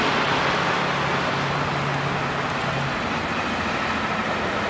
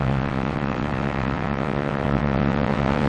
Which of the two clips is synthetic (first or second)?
second